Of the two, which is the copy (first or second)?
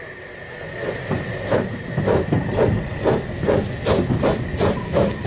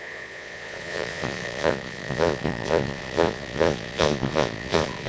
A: second